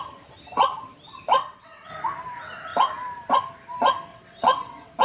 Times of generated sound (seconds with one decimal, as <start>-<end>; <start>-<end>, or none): 1.4-1.9; 4.1-5.0